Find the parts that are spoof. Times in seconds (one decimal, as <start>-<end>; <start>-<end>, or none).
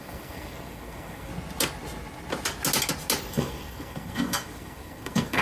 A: 0.0-1.3; 3.3-5.4